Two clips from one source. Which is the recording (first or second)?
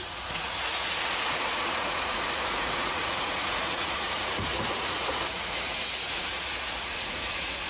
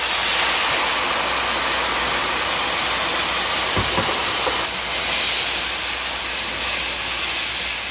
second